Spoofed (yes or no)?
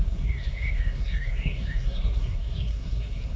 yes